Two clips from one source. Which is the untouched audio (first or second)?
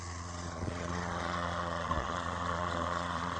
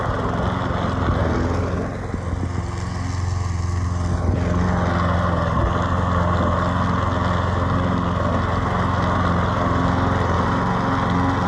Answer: second